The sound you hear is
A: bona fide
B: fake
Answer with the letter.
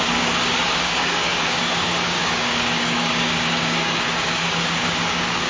B